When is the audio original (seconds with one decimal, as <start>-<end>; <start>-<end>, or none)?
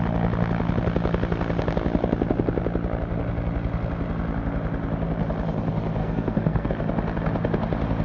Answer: 0.0-6.0; 6.7-8.0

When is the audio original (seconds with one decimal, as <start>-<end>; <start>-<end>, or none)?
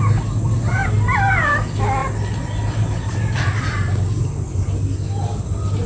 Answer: 0.0-5.9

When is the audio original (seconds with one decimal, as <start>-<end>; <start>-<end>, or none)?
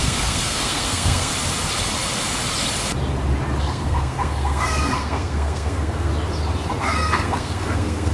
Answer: 1.3-3.6; 6.1-6.7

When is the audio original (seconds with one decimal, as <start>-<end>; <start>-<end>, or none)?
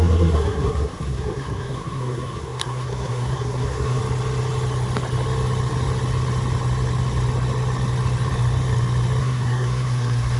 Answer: 4.0-9.2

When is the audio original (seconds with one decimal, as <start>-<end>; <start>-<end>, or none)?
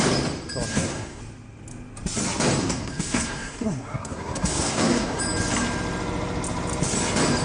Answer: 0.0-0.7; 1.2-2.6; 5.2-7.4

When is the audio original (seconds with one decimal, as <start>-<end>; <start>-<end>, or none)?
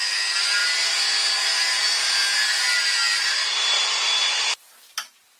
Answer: 0.0-5.4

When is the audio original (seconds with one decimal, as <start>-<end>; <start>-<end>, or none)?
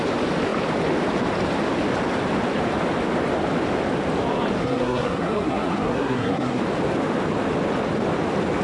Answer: 0.0-4.6; 6.6-8.6